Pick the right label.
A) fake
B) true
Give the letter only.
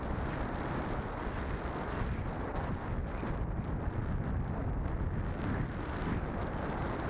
B